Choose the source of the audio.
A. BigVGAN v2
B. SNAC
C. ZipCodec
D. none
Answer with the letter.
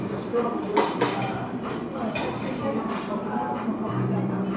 A